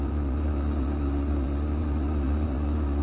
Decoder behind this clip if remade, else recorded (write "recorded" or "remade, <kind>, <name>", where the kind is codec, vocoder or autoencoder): remade, vocoder, Vocos